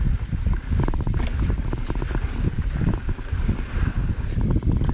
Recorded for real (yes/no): yes